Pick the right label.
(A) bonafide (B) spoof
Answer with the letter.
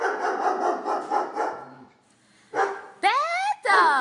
A